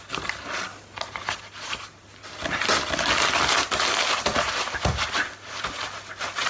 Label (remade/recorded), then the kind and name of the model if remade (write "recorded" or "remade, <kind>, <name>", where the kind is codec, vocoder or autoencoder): recorded